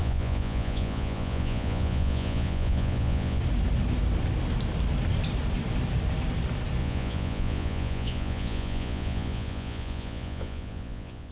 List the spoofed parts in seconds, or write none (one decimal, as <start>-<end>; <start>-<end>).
0.0-3.4; 6.8-11.3